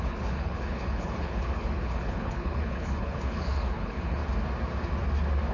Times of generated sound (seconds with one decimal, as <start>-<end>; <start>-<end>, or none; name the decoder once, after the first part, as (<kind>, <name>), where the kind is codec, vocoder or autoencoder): 0.0-4.2 (codec, HILCodec)